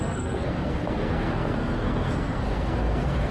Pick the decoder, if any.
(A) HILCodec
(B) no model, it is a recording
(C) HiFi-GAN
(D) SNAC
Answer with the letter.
D